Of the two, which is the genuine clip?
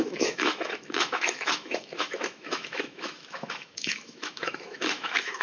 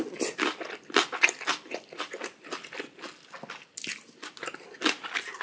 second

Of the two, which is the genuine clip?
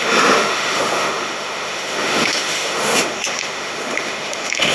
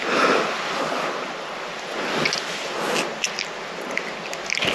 second